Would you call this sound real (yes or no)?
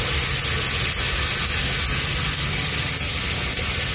yes